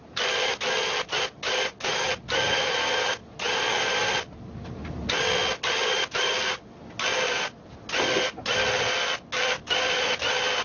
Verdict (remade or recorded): recorded